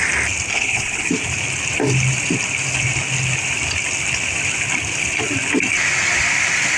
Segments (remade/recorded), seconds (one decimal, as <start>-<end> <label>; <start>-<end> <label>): 0.0-0.5 recorded; 0.5-1.1 remade; 1.1-6.8 recorded